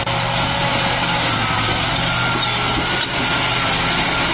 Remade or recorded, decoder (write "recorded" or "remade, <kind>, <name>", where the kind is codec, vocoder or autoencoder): recorded